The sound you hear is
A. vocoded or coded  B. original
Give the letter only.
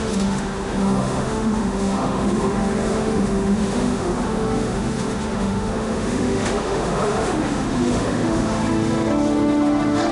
A